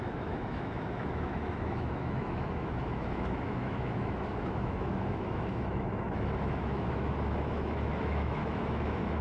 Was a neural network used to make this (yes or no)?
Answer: yes